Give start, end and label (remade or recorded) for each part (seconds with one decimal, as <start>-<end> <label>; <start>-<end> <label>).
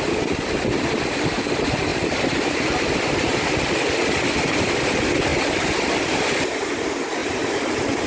0.0-1.9 recorded; 1.9-3.4 remade; 3.4-5.3 recorded; 5.3-5.9 remade; 5.9-7.2 recorded; 7.2-8.1 remade